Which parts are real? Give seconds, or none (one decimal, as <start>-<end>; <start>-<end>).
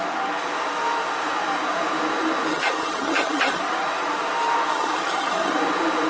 0.0-2.5; 3.6-4.7; 5.5-6.1